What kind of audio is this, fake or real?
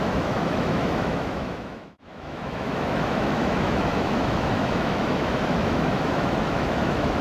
fake